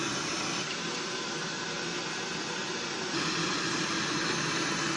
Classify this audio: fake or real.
fake